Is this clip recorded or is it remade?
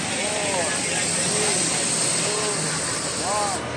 recorded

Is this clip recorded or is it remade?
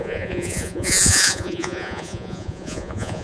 remade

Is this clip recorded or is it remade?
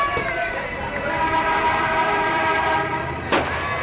remade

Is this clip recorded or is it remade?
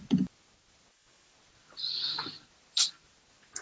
recorded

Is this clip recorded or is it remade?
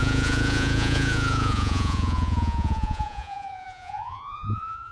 remade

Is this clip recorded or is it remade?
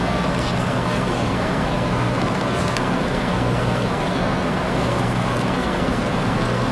remade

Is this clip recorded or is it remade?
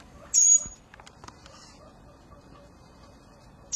remade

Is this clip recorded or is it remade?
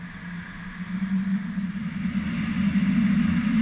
recorded